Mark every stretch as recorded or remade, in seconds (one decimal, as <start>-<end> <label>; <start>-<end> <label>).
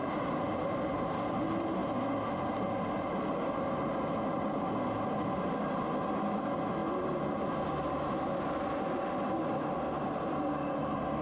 0.0-11.2 recorded